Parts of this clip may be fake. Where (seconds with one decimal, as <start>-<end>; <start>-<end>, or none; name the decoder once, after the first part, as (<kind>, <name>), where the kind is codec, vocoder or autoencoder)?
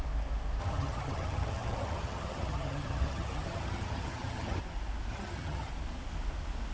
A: 0.6-4.6 (vocoder, HiFi-GAN); 5.1-5.7